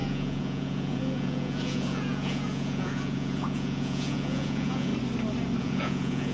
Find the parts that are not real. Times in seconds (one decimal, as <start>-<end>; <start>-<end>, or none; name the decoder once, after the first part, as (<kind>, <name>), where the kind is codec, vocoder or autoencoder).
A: 0.0-4.9 (vocoder, Vocos); 5.6-6.3